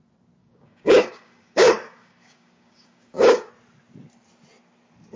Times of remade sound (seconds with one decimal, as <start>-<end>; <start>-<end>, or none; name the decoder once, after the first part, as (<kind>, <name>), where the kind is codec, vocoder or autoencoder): 0.4-3.5 (codec, DAC)